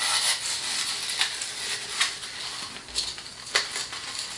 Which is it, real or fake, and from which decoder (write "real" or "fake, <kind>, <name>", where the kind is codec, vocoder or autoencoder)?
real